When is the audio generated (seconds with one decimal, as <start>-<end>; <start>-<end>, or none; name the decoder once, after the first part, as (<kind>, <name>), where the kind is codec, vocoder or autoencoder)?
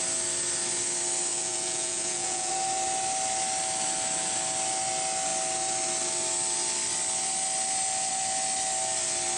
1.3-2.5 (vocoder, Vocos)